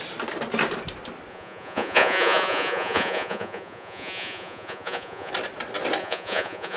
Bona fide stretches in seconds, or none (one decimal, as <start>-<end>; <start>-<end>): 0.0-1.3; 5.3-6.0